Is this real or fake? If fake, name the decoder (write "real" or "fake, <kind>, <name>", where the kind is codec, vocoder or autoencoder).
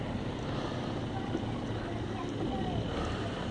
real